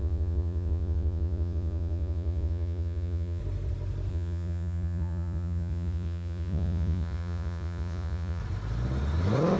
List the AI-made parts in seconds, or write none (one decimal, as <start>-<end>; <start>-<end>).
0.0-3.4; 4.1-8.4

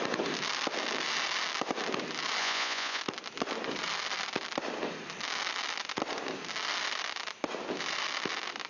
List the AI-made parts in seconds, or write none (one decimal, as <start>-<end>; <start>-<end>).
2.4-3.0

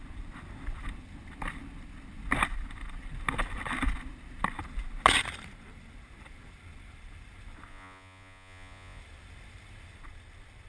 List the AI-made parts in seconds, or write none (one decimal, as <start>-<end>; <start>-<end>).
7.7-9.0